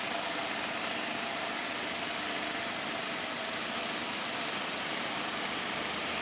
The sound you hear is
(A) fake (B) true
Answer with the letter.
B